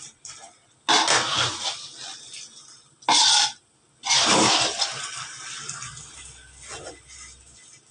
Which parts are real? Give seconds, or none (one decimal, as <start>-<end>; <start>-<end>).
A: 0.0-7.9